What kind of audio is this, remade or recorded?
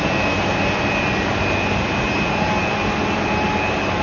recorded